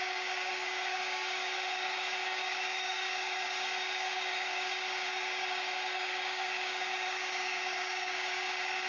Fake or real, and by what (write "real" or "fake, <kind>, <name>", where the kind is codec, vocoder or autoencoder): fake, codec, DAC